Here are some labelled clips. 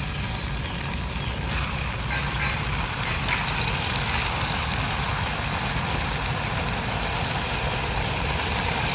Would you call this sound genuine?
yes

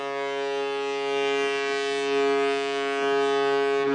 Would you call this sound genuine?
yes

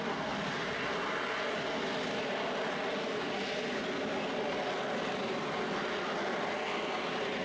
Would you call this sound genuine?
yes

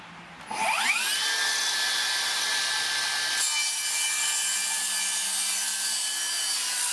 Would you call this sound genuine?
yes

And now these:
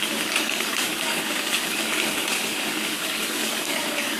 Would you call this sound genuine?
no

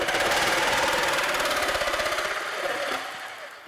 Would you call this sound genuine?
yes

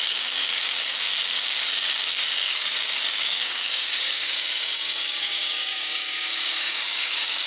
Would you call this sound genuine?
no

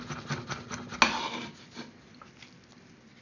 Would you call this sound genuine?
yes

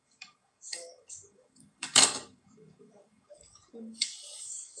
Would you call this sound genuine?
no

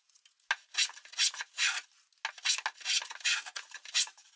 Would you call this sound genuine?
yes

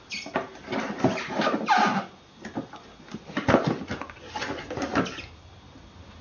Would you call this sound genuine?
yes